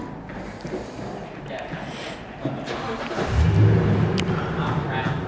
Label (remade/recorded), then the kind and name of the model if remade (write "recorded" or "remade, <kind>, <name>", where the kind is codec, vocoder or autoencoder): recorded